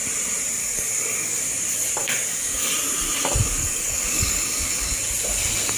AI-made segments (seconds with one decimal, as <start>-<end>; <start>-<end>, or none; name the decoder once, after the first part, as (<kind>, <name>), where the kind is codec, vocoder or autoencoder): 0.6-1.4 (codec, DAC); 2.0-2.7; 3.4-5.0